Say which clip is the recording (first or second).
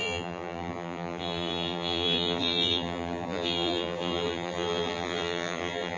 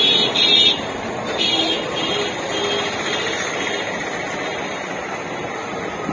second